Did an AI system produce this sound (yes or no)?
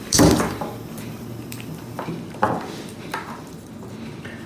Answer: yes